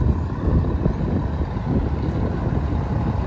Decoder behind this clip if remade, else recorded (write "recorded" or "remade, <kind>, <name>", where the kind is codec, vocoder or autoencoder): recorded